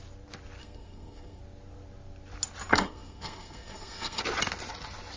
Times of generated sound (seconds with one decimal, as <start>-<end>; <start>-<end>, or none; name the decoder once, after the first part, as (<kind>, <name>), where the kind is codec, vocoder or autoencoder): 0.6-1.4 (codec, SNAC); 2.7-4.2